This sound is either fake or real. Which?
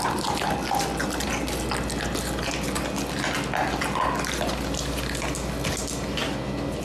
real